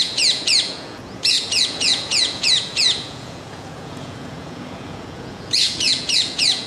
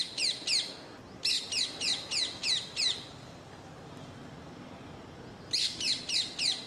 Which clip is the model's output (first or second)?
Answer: first